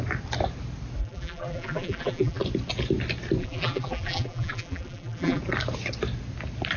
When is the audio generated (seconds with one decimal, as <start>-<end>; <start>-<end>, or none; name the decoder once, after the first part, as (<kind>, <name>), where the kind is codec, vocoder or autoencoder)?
1.0-2.4 (vocoder, BigVGAN v2); 3.4-5.4